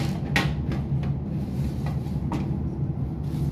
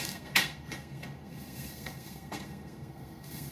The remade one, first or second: second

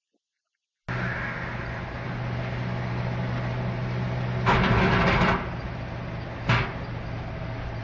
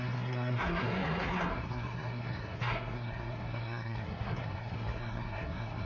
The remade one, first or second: second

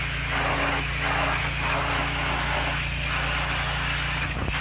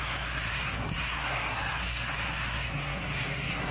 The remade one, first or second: second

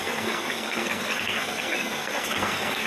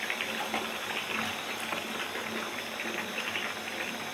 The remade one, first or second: first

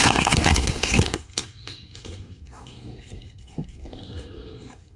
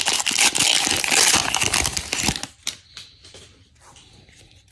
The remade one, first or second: first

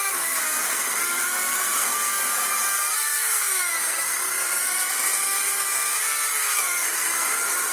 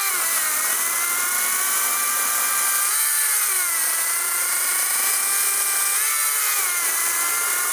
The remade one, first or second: first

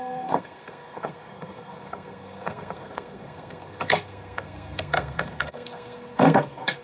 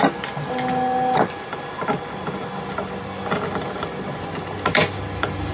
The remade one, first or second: first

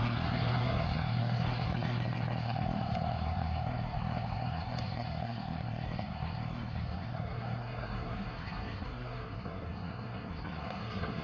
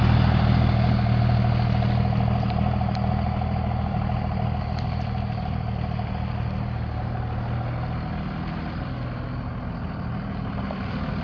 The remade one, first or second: first